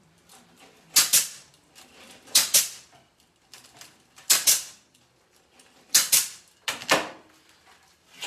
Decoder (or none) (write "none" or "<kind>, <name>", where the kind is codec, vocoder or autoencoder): vocoder, BigVGAN v2